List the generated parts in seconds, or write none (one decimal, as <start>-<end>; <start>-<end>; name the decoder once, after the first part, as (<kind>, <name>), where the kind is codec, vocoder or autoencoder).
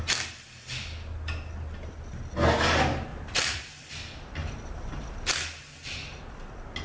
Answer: 3.1-3.9 (vocoder, BigVGAN v2); 4.4-5.3